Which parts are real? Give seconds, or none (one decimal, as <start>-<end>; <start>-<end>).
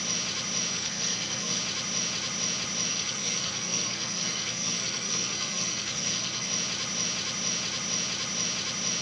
0.0-0.7; 1.6-2.9; 6.5-9.0